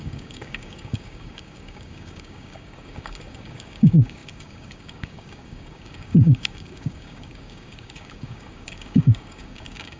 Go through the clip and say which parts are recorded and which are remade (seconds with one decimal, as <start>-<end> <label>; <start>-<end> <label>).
0.0-10.0 remade